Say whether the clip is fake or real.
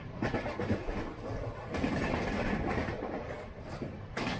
real